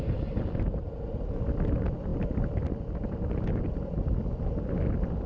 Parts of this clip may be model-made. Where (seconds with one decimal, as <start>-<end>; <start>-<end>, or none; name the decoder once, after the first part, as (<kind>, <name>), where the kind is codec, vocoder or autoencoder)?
none